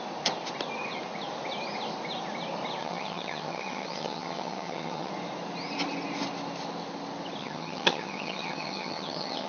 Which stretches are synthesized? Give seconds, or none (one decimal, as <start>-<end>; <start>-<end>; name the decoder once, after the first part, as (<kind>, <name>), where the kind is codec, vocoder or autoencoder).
2.8-5.1 (vocoder, HiFi-GAN); 7.4-9.5